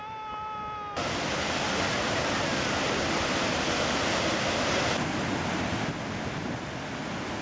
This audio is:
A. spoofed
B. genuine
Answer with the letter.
B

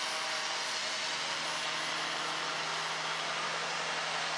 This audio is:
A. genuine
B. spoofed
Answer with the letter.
A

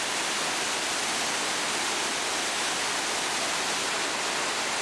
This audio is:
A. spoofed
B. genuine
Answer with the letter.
B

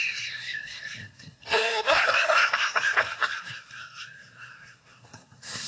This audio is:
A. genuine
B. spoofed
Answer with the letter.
B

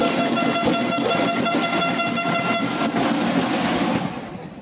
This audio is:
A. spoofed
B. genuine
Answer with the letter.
B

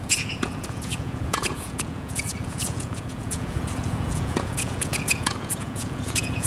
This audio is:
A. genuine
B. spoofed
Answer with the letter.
B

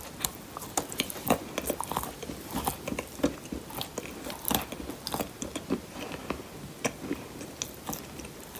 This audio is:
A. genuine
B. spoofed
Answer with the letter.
A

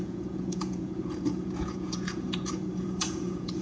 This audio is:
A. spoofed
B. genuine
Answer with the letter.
A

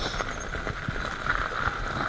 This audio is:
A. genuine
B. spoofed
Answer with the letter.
A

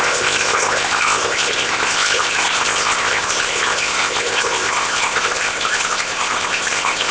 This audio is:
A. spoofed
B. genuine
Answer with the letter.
A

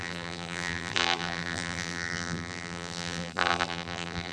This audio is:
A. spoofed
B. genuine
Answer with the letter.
A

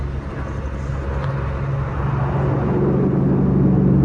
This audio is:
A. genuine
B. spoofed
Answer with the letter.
A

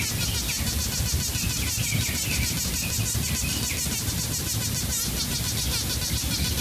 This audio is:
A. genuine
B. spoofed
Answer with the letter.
A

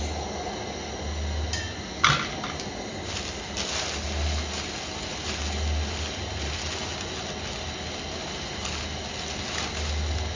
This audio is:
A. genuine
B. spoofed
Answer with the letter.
A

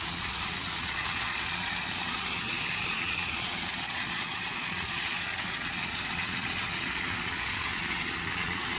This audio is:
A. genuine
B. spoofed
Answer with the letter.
B